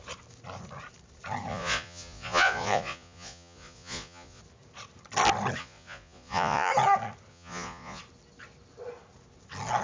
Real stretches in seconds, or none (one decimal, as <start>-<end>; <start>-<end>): 0.0-1.5; 4.4-5.6; 6.7-7.3; 8.0-9.8